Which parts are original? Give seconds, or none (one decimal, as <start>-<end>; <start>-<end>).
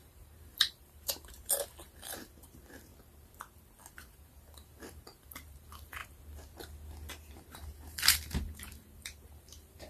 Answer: 2.9-3.9; 6.0-7.1